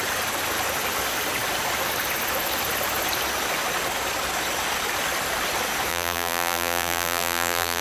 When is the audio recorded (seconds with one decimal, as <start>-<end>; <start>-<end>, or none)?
0.0-5.9